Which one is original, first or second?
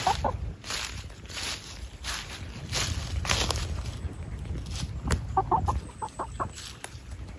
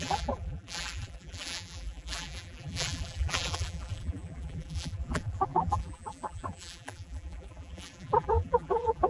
first